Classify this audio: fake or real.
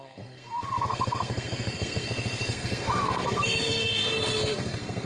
fake